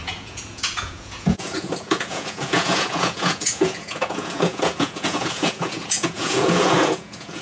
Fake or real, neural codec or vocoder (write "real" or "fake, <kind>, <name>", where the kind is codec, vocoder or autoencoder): fake, vocoder, Vocos